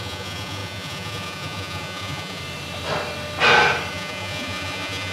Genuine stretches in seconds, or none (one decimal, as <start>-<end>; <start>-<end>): 2.4-3.9

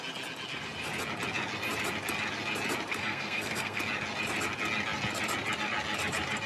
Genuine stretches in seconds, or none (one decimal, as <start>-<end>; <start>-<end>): 0.0-2.9; 3.8-6.5

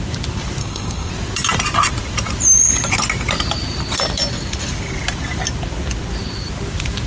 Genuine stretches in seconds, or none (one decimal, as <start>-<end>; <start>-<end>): 0.0-0.6; 1.1-7.1

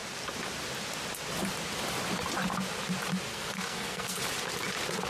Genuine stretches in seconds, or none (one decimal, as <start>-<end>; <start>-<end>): 0.0-3.3; 4.2-5.1

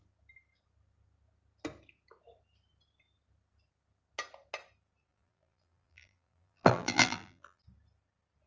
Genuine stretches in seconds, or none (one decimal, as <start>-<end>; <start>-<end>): 0.0-5.1; 7.6-8.5

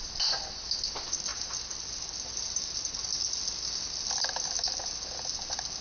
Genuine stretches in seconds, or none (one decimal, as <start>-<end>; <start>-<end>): 0.0-5.8

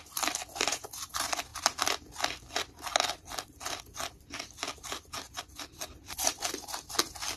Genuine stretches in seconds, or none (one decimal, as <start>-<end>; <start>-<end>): none

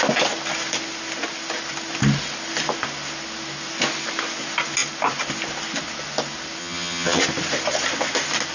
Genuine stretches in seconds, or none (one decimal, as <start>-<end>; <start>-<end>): 0.0-6.6; 7.2-8.5